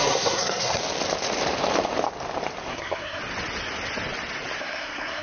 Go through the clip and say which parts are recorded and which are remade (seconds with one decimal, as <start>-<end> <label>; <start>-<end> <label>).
0.0-0.8 remade; 0.8-2.7 recorded; 2.7-3.2 remade; 3.2-4.6 recorded; 4.6-5.2 remade